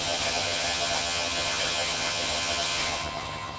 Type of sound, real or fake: fake